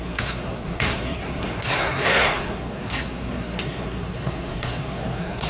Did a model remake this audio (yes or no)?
yes